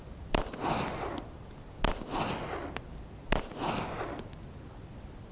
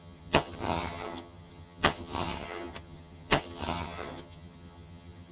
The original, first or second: first